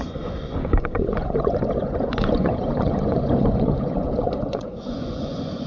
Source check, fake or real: fake